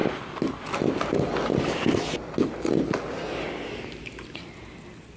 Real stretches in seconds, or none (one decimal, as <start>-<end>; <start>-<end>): 0.0-5.2